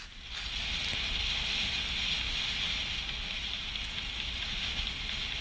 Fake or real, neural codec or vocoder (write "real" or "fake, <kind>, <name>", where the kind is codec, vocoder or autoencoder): real